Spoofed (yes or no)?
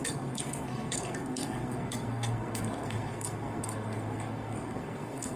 yes